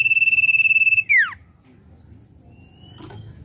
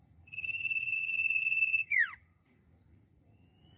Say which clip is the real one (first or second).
first